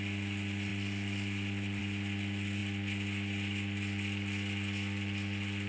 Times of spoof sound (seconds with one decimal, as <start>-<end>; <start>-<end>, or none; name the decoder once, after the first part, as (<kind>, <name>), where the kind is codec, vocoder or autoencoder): none